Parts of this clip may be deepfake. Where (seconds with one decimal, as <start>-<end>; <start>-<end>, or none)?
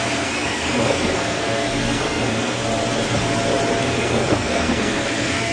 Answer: 0.0-2.6; 3.8-5.5